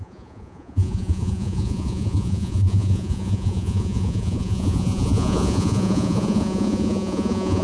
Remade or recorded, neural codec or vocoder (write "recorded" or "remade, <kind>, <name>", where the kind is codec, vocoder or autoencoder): remade, vocoder, Vocos